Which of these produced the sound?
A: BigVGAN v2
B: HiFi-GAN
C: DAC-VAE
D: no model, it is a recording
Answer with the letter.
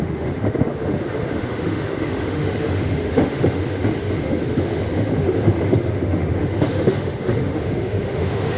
C